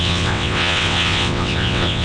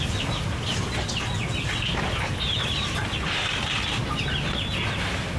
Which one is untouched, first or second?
second